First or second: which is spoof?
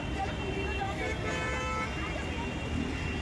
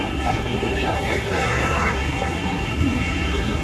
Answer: second